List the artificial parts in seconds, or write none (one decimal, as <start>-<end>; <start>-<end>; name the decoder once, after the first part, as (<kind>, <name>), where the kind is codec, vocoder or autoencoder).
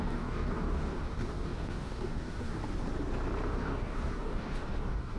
0.0-2.6 (codec, DAC); 3.5-5.2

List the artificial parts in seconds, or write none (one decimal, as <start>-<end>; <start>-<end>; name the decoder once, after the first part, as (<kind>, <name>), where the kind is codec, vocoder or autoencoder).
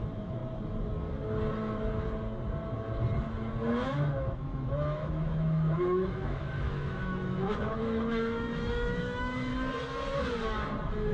0.0-0.4 (autoencoder, DAC-VAE); 3.7-9.5